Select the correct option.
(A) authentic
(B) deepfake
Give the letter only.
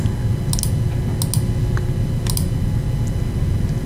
A